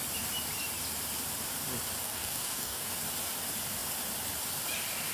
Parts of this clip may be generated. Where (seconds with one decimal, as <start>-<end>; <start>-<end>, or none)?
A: 2.0-2.9

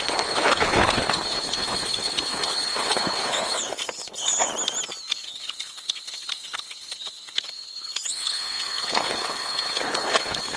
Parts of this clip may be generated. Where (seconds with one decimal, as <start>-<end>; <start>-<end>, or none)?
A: 0.0-4.5; 5.1-10.6

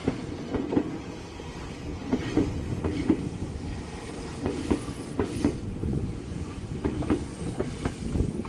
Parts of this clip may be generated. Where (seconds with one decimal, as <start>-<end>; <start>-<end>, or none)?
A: 0.0-0.7; 1.9-3.8; 4.3-7.6

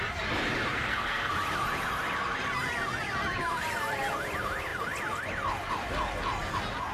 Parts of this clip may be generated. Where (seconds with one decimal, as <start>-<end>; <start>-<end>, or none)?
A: 0.7-1.3

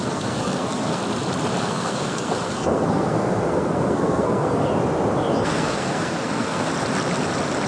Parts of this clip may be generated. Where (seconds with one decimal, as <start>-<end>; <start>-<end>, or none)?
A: 0.0-1.0; 1.6-4.7; 5.2-6.7